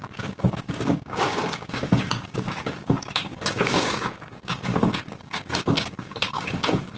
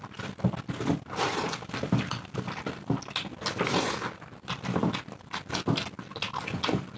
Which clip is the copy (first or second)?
first